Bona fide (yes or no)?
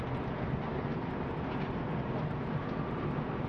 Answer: yes